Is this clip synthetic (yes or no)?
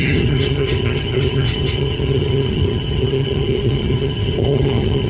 yes